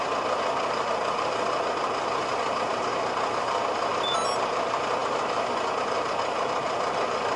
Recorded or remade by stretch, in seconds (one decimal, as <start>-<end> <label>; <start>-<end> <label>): 0.0-7.4 recorded

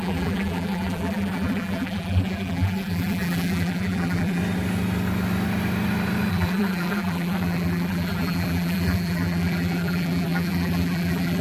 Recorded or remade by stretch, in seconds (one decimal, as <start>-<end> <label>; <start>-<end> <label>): 0.0-4.4 remade; 4.4-6.3 recorded; 6.3-11.4 remade

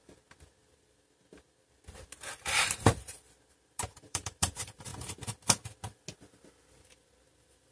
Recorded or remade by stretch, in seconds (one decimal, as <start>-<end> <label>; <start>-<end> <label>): 0.0-3.5 recorded; 3.5-4.9 remade; 4.9-7.7 recorded

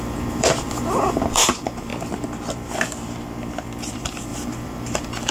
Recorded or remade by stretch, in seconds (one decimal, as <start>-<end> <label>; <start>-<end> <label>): 0.0-1.9 remade; 1.9-3.9 recorded; 3.9-5.3 remade

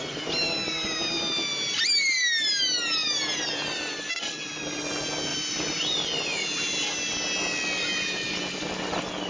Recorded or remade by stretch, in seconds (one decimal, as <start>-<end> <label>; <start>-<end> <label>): 0.0-3.0 recorded; 3.0-4.1 remade; 4.1-5.3 recorded; 5.3-6.6 remade; 6.6-9.3 recorded